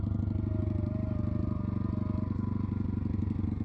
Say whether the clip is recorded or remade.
recorded